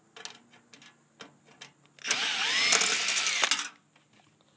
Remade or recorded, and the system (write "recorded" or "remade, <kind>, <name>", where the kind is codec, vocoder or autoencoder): recorded